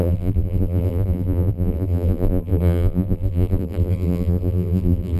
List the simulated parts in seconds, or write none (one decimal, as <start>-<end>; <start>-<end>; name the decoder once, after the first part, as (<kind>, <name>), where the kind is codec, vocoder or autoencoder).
0.0-5.2 (vocoder, BigVGAN v2)